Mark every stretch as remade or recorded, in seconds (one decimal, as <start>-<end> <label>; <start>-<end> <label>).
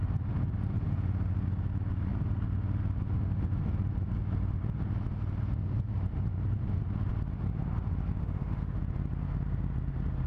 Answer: 0.0-8.2 recorded; 8.2-8.8 remade; 8.8-10.3 recorded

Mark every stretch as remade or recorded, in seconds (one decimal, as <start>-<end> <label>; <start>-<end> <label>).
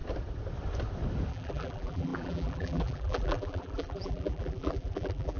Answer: 0.0-1.3 recorded; 1.3-5.4 remade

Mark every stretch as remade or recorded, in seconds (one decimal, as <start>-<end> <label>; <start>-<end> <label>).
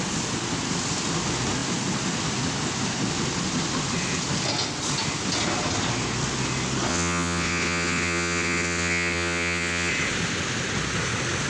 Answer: 0.0-6.9 recorded; 6.9-9.9 remade; 9.9-11.5 recorded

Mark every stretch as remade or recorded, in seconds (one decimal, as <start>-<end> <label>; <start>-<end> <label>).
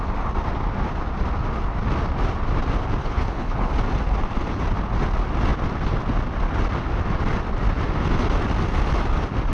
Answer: 0.0-3.0 recorded; 3.0-3.7 remade; 3.7-9.5 recorded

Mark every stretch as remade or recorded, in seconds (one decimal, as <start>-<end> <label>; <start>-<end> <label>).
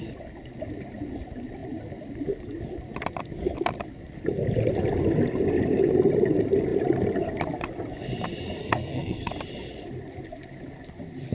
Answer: 0.0-8.6 recorded; 8.6-9.3 remade; 9.3-11.3 recorded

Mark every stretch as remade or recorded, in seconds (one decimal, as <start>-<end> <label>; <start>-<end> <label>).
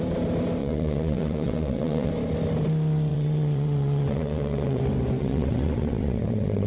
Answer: 0.0-0.6 recorded; 0.6-2.1 remade; 2.1-3.1 recorded; 3.1-4.8 remade; 4.8-5.2 recorded; 5.2-6.7 remade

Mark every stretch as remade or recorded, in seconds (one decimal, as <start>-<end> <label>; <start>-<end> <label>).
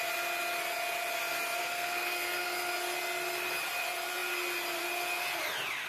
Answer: 0.0-1.6 recorded; 1.6-2.7 remade; 2.7-5.9 recorded